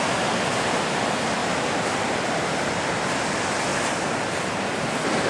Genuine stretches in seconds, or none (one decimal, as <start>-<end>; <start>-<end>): 0.0-1.4; 3.0-5.3